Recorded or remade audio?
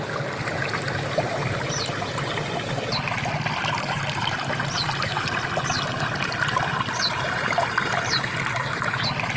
recorded